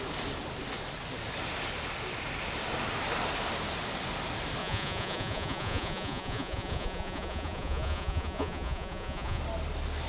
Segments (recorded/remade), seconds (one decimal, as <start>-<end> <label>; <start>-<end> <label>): 0.0-4.6 recorded; 4.6-9.4 remade; 9.4-10.1 recorded